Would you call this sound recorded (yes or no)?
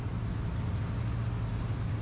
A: yes